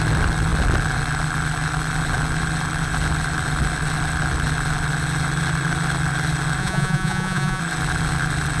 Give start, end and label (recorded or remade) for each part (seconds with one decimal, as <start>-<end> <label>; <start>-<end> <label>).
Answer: 0.0-6.6 recorded; 6.6-7.6 remade; 7.6-8.6 recorded